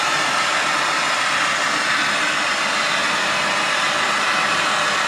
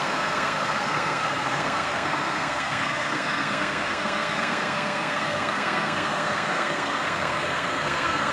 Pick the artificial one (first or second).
second